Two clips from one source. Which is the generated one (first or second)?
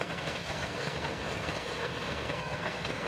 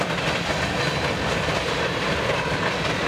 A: first